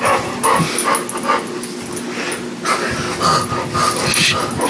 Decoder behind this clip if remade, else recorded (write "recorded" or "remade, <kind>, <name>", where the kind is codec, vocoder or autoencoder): recorded